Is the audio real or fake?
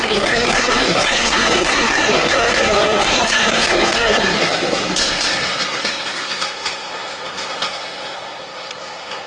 fake